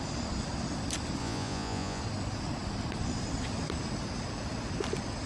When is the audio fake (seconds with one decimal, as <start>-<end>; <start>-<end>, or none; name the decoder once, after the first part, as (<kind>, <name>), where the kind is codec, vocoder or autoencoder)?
1.2-2.0 (vocoder, Vocos)

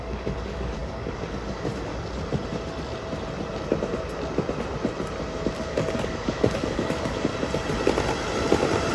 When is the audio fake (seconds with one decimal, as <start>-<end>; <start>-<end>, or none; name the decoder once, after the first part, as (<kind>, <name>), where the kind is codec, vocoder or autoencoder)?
0.0-1.9 (codec, DAC); 5.6-7.3